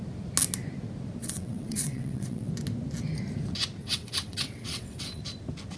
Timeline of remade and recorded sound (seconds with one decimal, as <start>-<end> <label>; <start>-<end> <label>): 0.0-1.2 recorded; 1.2-2.5 remade; 2.5-3.8 recorded; 3.8-5.2 remade; 5.2-5.8 recorded